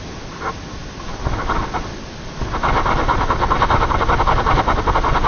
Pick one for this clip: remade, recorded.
recorded